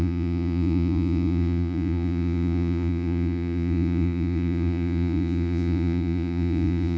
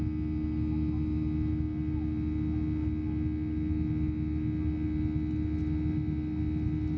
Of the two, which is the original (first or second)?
second